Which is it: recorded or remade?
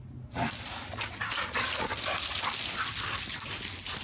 recorded